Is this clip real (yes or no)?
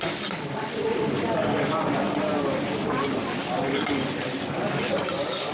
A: yes